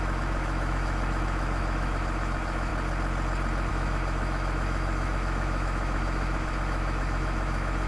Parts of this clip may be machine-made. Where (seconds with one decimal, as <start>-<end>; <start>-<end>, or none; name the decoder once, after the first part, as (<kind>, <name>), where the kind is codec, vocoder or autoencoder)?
0.0-2.7 (autoencoder, DAC-VAE); 3.7-7.9